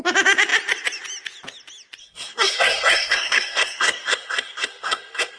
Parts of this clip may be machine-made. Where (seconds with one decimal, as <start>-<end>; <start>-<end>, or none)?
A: 2.0-5.4